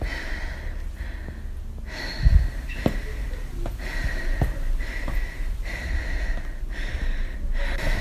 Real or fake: real